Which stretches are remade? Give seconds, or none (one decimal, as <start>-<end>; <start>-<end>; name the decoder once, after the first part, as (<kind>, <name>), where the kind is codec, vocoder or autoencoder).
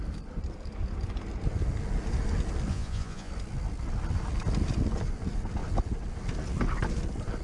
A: 2.7-3.3 (vocoder, Vocos)